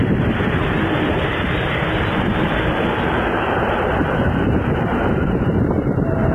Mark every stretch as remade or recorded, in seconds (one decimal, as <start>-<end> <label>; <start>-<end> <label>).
0.0-6.3 remade